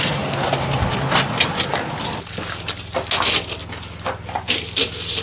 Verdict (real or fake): real